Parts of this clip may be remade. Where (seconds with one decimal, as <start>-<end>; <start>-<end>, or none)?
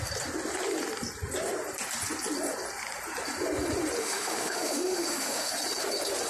4.0-5.5